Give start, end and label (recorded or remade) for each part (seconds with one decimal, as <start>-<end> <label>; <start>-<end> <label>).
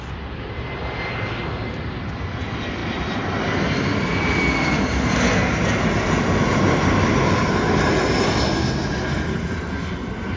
0.0-10.4 recorded